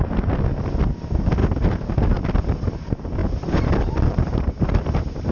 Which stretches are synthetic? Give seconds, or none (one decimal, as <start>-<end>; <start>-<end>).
1.4-2.2; 3.2-5.3